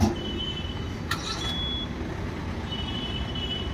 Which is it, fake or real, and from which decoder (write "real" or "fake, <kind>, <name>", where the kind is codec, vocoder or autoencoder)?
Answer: real